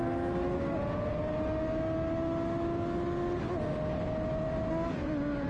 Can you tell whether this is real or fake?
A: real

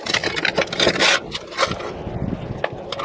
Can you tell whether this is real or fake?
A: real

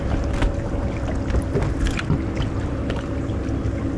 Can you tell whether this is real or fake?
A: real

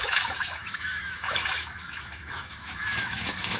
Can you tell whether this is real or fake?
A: fake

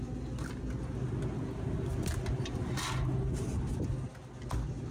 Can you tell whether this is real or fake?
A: real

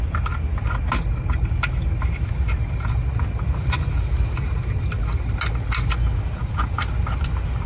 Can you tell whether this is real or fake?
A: real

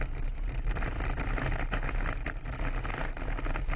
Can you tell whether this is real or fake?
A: real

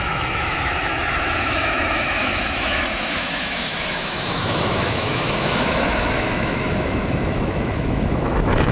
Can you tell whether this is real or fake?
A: fake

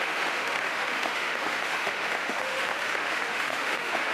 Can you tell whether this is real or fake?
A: fake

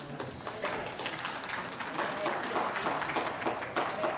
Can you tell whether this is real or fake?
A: real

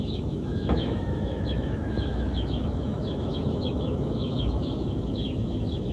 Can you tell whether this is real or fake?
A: fake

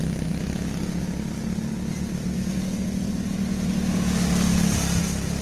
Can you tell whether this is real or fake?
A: real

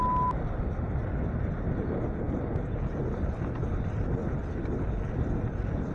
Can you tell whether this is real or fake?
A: real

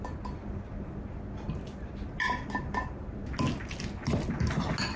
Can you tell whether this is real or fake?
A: real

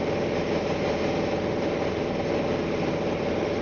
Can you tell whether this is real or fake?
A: real